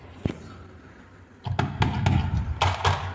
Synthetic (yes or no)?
no